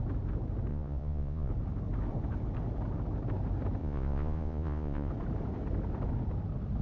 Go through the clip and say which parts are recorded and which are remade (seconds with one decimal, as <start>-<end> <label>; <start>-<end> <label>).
0.0-0.7 recorded; 0.7-1.5 remade; 1.5-3.8 recorded; 3.8-5.1 remade; 5.1-6.8 recorded